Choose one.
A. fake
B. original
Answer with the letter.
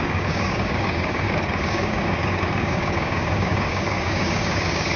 A